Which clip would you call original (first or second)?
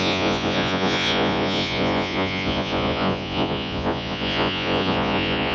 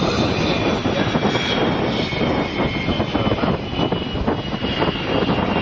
second